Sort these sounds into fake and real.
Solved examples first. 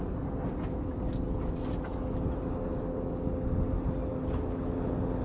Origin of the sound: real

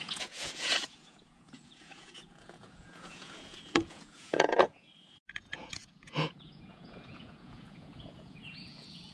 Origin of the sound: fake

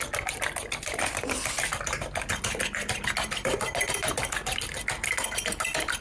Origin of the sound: real